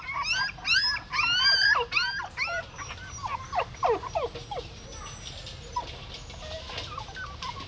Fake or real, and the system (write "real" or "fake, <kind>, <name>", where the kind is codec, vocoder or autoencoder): real